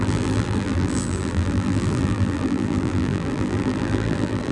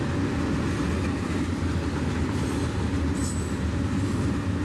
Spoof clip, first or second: first